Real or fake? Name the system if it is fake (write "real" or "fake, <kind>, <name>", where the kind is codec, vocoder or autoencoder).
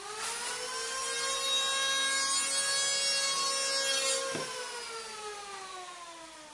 real